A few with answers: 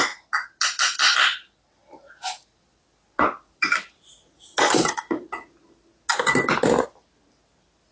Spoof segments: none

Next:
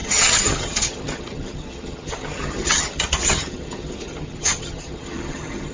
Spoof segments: 0.0-5.7 (vocoder, HiFi-GAN)

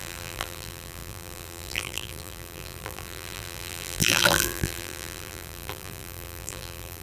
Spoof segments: 0.0-7.0 (vocoder, BigVGAN v2)

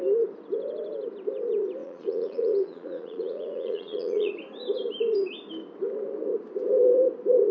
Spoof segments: 1.8-4.3 (vocoder, Vocos)